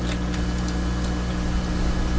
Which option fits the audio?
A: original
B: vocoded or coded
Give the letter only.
A